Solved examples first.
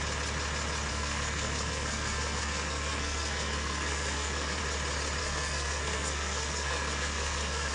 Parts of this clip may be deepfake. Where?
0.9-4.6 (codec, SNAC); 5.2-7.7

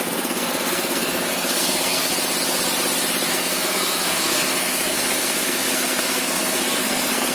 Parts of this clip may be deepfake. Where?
0.0-2.1 (codec, SNAC); 3.3-7.3

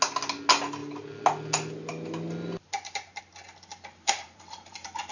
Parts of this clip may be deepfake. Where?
3.7-5.1 (vocoder, BigVGAN v2)

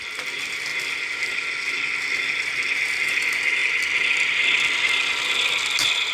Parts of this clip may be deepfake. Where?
0.7-2.7 (vocoder, BigVGAN v2); 3.6-4.4

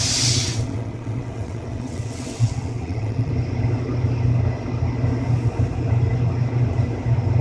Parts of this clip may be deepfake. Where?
0.4-3.3 (vocoder, WaveNeXt)

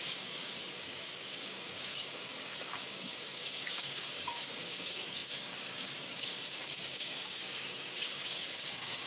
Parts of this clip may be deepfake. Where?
0.0-9.1 (codec, DAC)

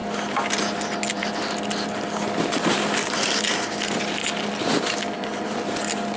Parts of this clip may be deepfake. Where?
none

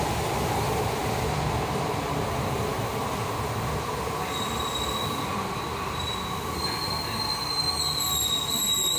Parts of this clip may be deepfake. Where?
none